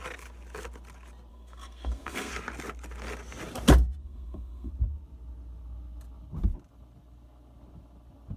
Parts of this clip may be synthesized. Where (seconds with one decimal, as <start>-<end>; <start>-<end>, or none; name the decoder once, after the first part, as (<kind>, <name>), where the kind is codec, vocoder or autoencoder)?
1.3-2.3 (codec, SNAC); 4.0-4.7